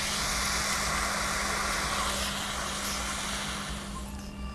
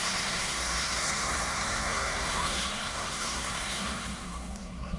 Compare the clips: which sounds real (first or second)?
first